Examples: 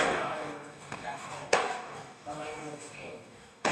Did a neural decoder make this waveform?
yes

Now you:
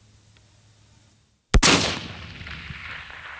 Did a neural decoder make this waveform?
no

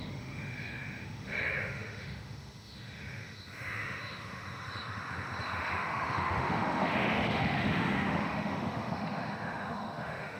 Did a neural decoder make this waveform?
yes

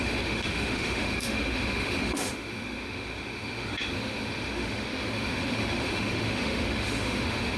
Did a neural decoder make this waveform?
yes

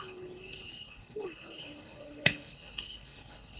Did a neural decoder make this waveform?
yes